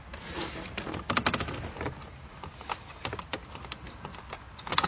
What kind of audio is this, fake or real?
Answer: real